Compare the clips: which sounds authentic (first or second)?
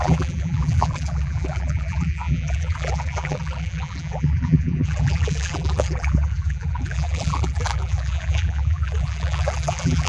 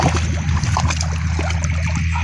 second